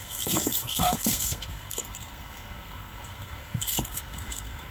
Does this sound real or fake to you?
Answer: fake